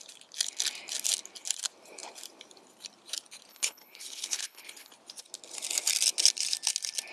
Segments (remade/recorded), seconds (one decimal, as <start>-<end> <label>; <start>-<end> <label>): 0.0-3.5 recorded; 3.5-4.9 remade; 4.9-7.1 recorded